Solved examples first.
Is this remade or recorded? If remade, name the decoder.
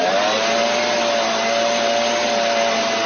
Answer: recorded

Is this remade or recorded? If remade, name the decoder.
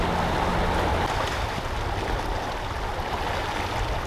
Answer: recorded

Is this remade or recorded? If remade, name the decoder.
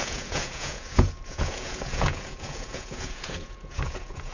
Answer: remade, vocoder, Vocos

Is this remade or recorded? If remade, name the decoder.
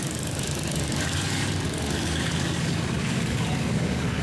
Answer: remade, codec, DAC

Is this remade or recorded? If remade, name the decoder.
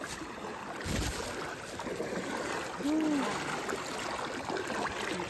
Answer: recorded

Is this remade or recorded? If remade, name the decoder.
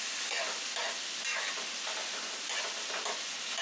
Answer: recorded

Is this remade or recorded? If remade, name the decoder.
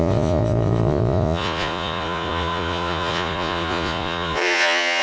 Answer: remade, vocoder, Vocos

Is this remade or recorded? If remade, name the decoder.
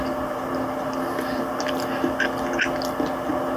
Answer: recorded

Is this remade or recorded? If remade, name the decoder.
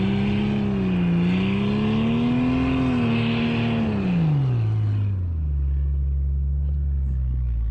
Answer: recorded